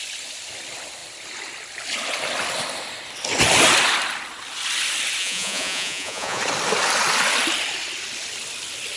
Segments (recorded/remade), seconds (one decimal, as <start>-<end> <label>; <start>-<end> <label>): 0.0-5.2 recorded; 5.2-6.4 remade; 6.4-9.0 recorded